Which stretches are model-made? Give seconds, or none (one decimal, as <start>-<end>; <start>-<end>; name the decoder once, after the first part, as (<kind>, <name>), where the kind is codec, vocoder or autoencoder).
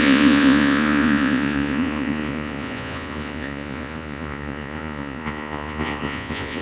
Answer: 0.0-6.6 (vocoder, Vocos)